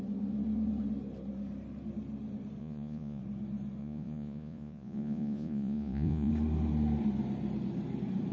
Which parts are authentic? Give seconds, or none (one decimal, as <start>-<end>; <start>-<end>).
0.0-2.6; 3.2-3.8; 6.3-8.3